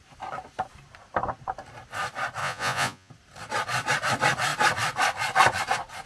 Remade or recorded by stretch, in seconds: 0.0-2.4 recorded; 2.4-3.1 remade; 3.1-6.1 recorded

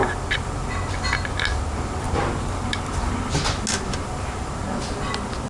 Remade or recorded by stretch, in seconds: 0.0-5.5 recorded

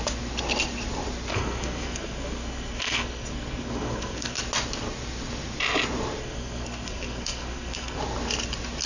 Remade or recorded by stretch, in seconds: 0.0-1.3 recorded; 1.3-4.4 remade; 4.4-6.2 recorded; 6.2-8.0 remade; 8.0-8.9 recorded

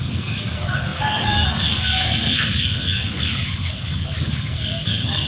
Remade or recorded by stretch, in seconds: 0.0-5.3 remade

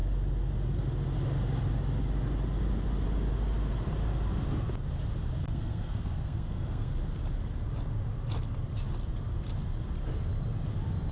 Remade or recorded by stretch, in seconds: 0.0-5.4 recorded; 5.4-6.9 remade; 6.9-11.1 recorded